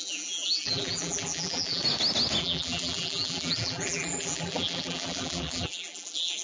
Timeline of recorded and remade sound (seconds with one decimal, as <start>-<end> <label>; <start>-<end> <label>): 0.0-1.8 remade; 1.8-2.4 recorded; 2.4-6.4 remade

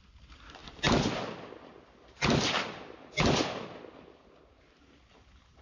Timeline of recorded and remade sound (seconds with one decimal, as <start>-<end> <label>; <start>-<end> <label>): 0.0-5.6 recorded

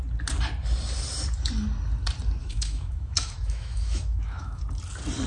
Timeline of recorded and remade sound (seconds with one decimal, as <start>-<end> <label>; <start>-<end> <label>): 0.0-2.4 recorded; 2.4-4.6 remade; 4.6-5.3 recorded